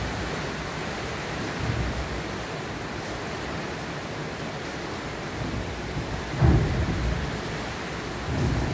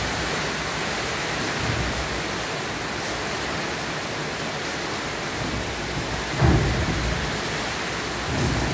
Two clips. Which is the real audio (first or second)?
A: second